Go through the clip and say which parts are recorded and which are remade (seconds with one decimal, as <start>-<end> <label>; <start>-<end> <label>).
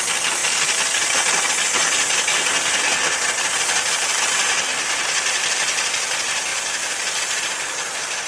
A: 0.0-4.7 recorded; 4.7-5.9 remade; 5.9-6.5 recorded; 6.5-7.4 remade; 7.4-8.3 recorded